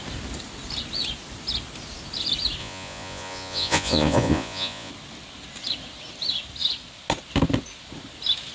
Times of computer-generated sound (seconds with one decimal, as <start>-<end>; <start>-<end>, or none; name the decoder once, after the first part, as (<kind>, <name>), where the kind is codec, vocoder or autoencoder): 2.6-4.9 (vocoder, Vocos)